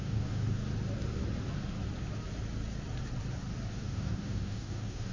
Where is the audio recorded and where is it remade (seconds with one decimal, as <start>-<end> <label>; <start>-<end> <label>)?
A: 0.0-0.6 remade; 0.6-3.7 recorded; 3.7-5.1 remade